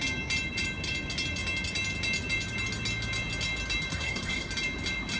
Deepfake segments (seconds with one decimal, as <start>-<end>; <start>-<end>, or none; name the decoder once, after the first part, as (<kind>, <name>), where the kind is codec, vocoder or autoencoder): 3.9-4.5 (codec, SNAC)